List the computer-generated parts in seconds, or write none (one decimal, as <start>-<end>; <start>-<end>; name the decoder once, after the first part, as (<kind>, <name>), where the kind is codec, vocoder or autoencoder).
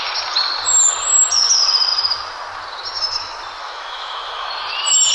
3.6-4.5 (autoencoder, DAC-VAE)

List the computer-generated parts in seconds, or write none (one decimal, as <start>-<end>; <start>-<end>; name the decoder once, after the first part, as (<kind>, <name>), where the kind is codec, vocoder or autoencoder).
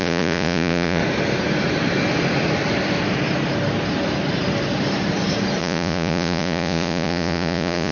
0.0-1.0 (vocoder, Vocos); 5.6-7.9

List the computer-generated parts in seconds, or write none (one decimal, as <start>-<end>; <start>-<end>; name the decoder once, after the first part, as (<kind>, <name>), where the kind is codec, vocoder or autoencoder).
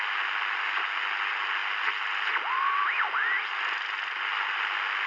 none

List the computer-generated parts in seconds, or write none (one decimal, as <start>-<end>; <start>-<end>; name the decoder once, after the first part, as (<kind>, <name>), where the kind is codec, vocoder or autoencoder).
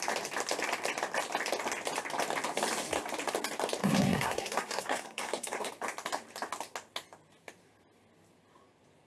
3.8-5.7 (codec, SNAC)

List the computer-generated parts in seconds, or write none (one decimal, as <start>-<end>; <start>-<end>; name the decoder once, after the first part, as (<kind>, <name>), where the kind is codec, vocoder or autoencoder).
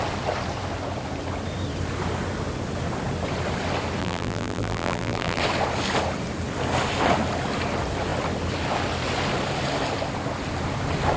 4.0-5.4 (vocoder, BigVGAN v2)